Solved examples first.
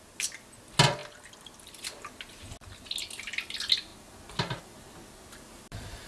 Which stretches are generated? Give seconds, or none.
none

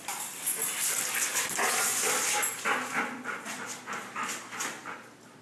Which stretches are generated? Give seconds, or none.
none

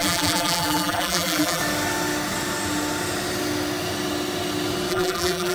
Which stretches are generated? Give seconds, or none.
0.0-1.6 (vocoder, BigVGAN v2); 4.9-5.5

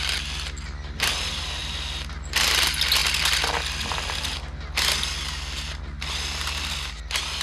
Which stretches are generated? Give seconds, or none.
none

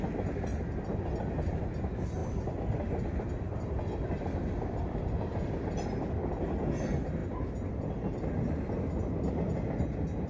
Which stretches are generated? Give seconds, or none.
2.2-6.4 (vocoder, BigVGAN v2)

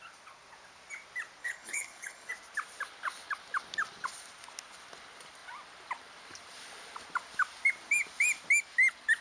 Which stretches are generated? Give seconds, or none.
1.4-2.3 (codec, HILCodec)

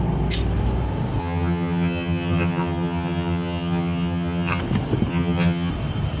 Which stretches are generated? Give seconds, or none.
1.2-4.6 (vocoder, HiFi-GAN); 5.1-5.7